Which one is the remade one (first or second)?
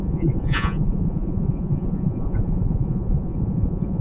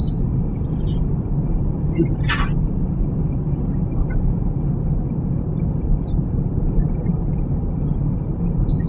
first